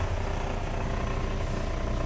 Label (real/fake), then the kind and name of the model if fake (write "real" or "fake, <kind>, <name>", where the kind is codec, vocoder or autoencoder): real